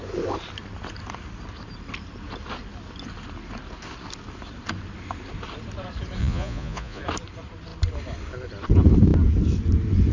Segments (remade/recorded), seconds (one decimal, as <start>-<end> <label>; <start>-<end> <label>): 0.0-6.2 recorded; 6.2-7.0 remade; 7.0-10.1 recorded